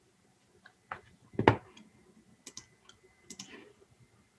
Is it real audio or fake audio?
real